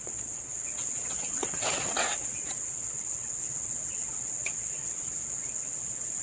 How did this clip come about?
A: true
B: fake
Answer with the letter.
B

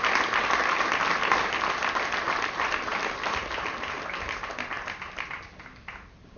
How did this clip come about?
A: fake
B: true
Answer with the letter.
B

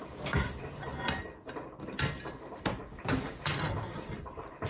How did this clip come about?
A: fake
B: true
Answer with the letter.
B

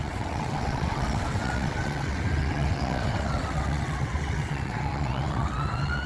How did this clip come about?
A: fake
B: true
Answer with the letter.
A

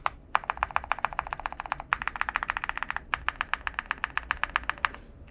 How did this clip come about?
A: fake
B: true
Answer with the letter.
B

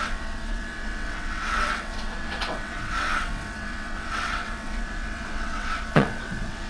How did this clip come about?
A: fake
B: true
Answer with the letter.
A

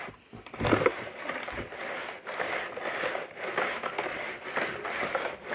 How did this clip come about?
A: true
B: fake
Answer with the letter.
A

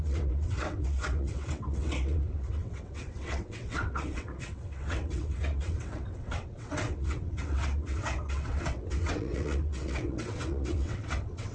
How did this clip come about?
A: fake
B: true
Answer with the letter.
A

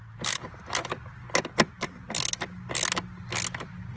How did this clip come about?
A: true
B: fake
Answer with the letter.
A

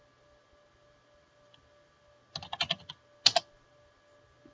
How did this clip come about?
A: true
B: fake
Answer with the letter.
A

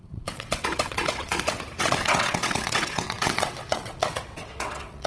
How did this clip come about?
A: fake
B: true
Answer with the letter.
A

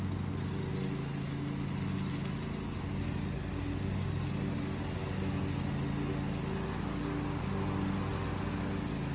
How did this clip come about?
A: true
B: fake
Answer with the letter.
A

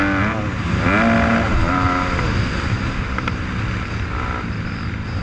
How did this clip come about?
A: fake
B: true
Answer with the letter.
B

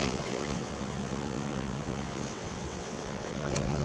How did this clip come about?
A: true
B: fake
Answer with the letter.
B